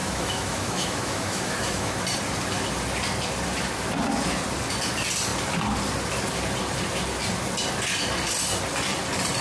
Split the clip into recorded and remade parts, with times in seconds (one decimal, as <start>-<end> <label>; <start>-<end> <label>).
0.0-2.0 remade; 2.0-9.4 recorded